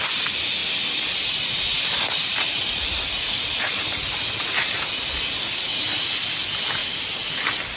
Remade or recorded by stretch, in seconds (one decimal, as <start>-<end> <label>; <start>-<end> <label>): 0.0-0.6 recorded; 0.6-4.9 remade; 4.9-6.8 recorded; 6.8-7.3 remade; 7.3-7.8 recorded